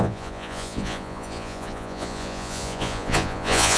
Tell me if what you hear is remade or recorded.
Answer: remade